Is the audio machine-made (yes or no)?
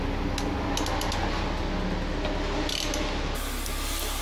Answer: no